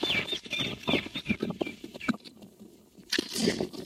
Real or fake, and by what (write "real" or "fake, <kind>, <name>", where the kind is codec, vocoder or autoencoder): real